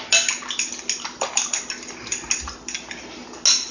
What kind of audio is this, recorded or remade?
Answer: recorded